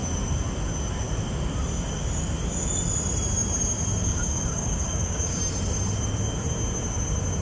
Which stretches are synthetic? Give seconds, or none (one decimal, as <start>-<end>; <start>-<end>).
4.0-5.4